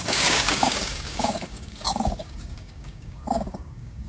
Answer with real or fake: fake